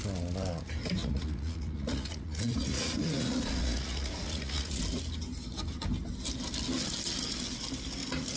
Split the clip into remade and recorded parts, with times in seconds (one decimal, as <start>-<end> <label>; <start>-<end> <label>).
0.0-1.0 recorded; 1.0-4.8 remade; 4.8-8.4 recorded

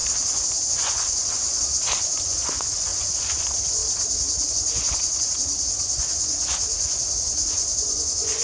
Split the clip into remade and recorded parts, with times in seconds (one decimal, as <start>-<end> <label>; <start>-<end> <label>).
0.0-0.7 recorded; 0.7-1.7 remade; 1.7-2.2 recorded; 2.2-3.8 remade; 3.8-4.5 recorded; 4.5-8.4 remade

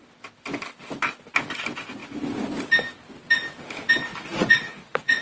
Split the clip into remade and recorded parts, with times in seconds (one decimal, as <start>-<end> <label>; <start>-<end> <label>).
0.0-4.1 recorded; 4.1-5.2 remade